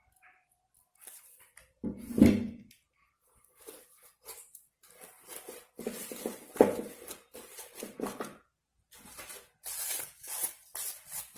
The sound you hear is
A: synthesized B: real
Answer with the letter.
B